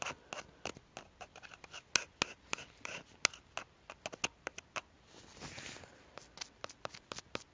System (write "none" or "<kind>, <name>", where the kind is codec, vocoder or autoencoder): none